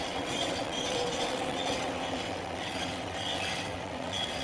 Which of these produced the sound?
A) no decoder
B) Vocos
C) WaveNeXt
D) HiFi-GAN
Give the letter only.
C